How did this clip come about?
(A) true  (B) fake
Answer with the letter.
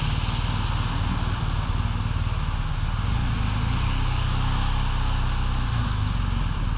A